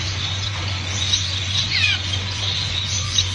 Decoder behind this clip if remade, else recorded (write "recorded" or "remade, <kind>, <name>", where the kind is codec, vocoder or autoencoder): remade, vocoder, Vocos